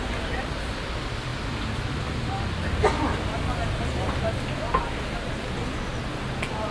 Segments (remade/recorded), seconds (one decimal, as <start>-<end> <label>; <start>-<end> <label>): 0.0-6.7 recorded